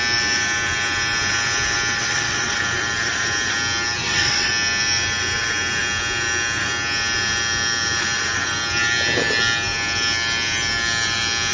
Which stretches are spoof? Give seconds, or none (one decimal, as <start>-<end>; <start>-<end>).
2.0-2.6; 4.0-4.5